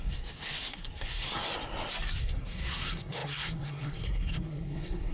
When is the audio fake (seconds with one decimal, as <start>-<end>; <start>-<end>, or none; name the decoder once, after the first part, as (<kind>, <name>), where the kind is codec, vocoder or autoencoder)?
0.0-1.3 (codec, SNAC); 2.2-5.1